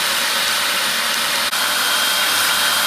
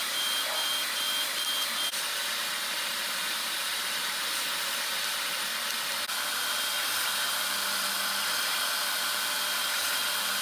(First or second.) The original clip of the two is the first